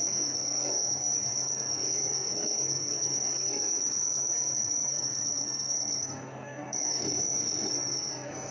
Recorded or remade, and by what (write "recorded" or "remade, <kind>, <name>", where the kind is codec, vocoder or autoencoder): remade, codec, SNAC